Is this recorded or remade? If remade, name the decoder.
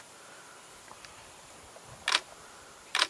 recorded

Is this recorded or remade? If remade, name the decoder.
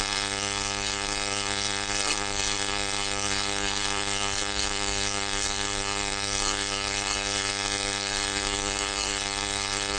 remade, codec, SNAC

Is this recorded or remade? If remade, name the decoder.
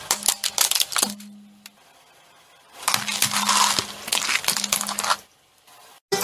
recorded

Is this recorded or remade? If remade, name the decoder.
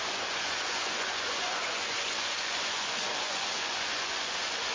remade, vocoder, Vocos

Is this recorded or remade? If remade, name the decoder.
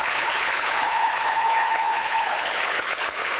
remade, codec, HILCodec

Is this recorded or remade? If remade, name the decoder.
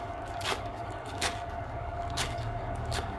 remade, codec, DAC